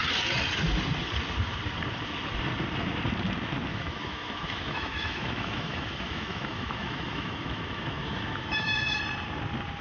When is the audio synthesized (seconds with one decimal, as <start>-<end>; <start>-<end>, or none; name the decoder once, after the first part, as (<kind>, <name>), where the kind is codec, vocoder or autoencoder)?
3.7-9.0 (autoencoder, DAC-VAE)